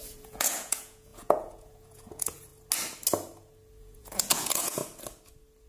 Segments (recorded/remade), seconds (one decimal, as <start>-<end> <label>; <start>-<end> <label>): 0.0-2.5 remade; 2.5-3.8 recorded; 3.8-4.8 remade; 4.8-5.7 recorded